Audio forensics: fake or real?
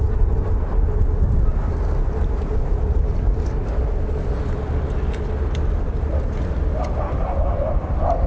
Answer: real